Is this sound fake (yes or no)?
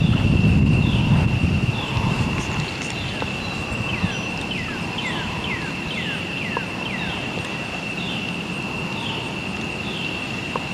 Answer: no